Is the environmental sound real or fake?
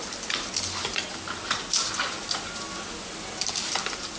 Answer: real